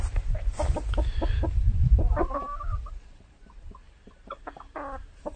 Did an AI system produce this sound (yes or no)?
no